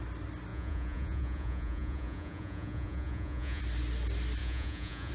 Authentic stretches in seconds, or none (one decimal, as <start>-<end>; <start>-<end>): 0.0-0.5; 3.6-4.4